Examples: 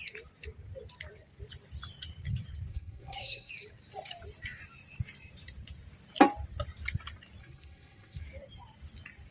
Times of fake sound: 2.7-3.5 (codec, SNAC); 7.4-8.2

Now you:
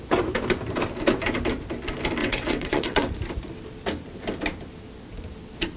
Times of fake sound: 2.2-3.1 (vocoder, WaveNeXt)

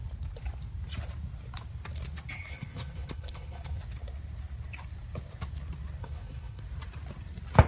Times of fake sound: 2.5-3.8 (codec, HILCodec); 6.0-6.6

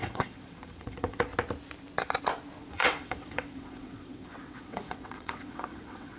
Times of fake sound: 0.0-1.3 (vocoder, WaveNeXt); 2.6-6.2

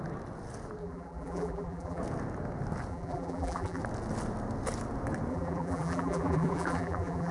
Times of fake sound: 0.8-2.0 (vocoder, BigVGAN v2); 2.9-3.8; 5.3-7.3

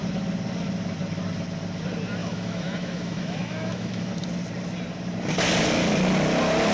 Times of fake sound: 2.2-4.1 (autoencoder, DAC-VAE)

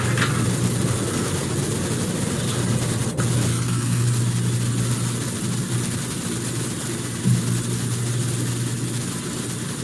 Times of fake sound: 3.5-4.1 (codec, SNAC)